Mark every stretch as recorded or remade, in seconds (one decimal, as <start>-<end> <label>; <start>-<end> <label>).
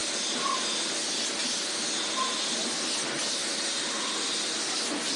0.0-5.2 recorded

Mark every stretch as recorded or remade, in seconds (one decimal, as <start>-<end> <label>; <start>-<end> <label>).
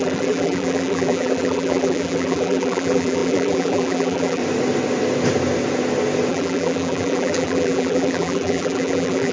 0.0-4.4 remade; 4.4-6.3 recorded; 6.3-9.3 remade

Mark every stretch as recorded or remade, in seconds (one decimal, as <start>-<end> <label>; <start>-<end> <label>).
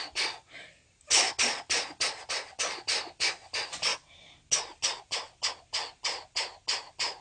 0.0-7.2 recorded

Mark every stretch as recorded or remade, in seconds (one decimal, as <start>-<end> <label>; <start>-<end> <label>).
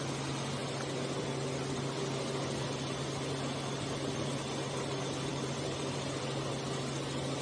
0.0-5.3 recorded; 5.3-6.2 remade; 6.2-7.4 recorded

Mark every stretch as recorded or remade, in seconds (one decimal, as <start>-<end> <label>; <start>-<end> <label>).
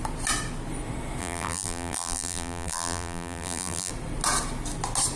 0.0-1.2 recorded; 1.2-3.9 remade; 3.9-5.2 recorded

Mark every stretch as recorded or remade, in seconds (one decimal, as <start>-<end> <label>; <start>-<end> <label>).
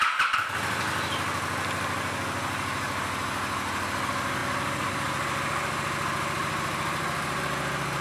0.0-8.0 recorded